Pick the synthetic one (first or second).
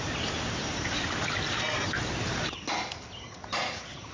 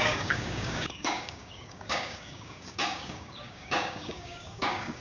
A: second